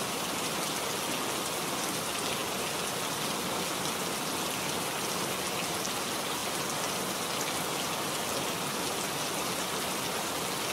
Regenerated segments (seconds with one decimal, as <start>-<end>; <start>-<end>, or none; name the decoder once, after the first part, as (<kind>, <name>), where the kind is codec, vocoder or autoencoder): none

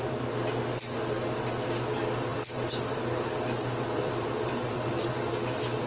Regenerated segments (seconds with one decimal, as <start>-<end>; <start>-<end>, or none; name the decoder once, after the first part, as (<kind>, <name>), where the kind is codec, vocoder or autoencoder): 2.3-5.1 (vocoder, BigVGAN v2)

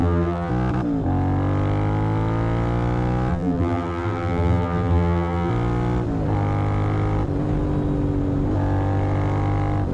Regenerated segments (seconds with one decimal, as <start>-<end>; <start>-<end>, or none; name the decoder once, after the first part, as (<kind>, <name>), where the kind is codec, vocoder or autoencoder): 0.0-0.5 (vocoder, BigVGAN v2); 3.3-5.5

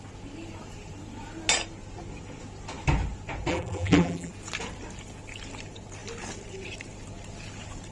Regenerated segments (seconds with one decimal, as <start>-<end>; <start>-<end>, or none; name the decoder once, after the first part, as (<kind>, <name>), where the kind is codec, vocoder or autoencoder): 3.5-4.3 (vocoder, BigVGAN v2)

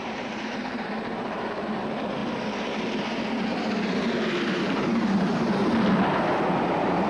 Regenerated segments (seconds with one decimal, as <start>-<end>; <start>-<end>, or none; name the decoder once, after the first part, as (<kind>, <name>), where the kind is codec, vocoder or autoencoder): 0.0-2.2 (vocoder, BigVGAN v2); 4.6-5.3; 6.5-7.1

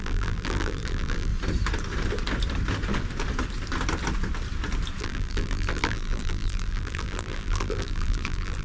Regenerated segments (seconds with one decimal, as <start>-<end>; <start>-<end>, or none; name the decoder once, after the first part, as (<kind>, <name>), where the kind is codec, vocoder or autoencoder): 0.0-1.3 (vocoder, BigVGAN v2); 5.0-8.6